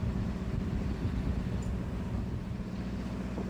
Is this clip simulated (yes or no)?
no